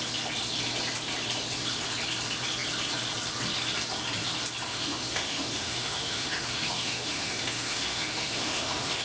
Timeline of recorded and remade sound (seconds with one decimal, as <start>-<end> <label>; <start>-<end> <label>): 0.0-4.7 recorded; 4.7-9.0 remade